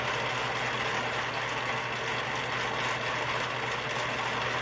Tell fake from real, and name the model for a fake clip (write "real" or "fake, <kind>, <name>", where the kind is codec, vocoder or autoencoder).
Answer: real